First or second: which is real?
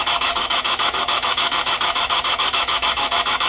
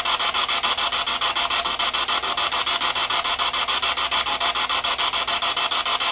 second